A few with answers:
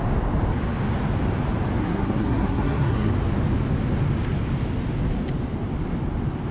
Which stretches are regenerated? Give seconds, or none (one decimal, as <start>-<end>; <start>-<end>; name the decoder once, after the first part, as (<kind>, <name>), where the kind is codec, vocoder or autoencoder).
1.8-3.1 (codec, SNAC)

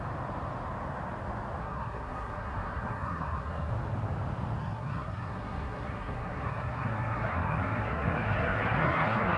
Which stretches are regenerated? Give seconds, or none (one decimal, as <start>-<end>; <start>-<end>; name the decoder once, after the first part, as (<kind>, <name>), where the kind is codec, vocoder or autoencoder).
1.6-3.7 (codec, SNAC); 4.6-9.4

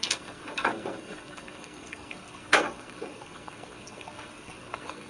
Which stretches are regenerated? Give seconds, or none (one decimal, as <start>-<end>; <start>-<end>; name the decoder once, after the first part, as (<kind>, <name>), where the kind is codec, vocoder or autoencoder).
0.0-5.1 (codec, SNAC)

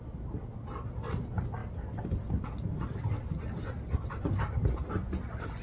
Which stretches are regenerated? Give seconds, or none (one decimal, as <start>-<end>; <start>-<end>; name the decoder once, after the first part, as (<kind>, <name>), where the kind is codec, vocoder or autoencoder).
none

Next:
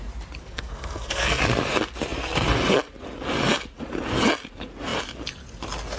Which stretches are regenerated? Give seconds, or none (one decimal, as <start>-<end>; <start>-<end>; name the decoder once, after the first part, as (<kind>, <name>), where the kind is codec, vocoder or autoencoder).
0.4-1.4 (codec, SNAC)

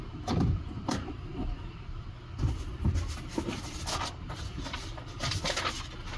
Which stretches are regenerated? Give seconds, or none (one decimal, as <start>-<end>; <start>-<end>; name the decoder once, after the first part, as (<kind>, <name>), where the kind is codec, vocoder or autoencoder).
none